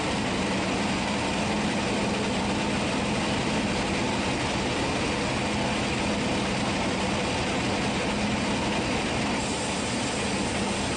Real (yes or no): yes